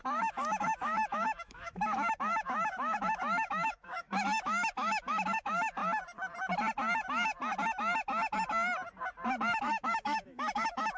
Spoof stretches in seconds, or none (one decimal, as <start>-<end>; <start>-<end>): 0.0-5.8; 9.6-11.0